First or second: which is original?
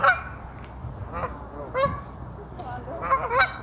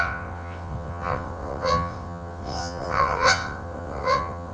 first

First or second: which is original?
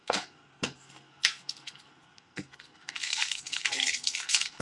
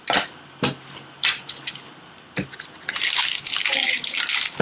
second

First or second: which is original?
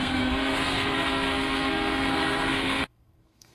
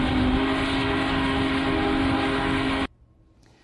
second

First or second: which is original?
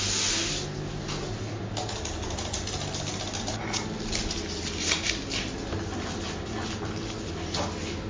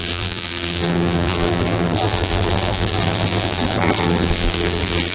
first